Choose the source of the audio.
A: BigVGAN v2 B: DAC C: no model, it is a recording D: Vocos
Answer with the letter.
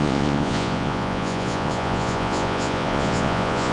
D